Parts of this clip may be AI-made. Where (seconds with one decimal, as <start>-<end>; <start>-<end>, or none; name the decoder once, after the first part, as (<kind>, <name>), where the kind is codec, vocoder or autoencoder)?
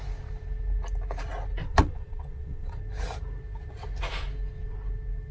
1.6-2.8 (vocoder, WaveNeXt)